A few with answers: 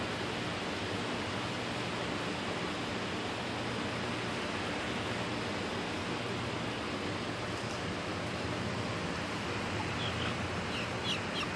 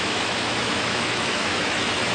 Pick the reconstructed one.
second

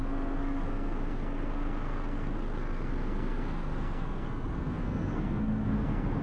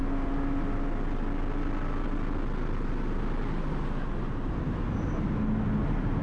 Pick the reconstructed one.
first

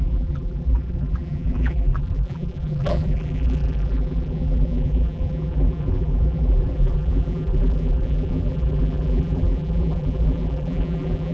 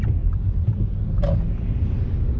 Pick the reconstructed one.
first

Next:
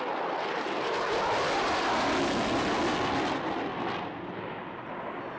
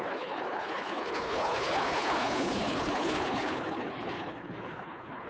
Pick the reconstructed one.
second